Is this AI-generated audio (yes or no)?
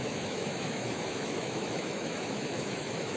yes